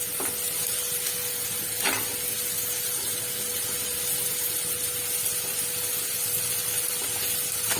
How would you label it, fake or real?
real